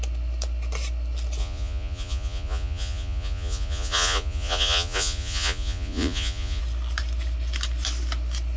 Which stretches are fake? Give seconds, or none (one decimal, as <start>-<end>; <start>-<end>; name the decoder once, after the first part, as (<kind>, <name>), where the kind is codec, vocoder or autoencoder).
1.4-6.6 (vocoder, Vocos)